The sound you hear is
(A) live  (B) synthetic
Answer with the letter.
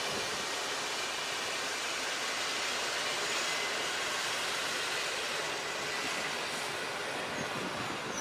A